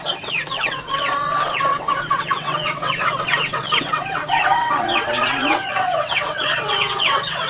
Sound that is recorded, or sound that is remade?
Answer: remade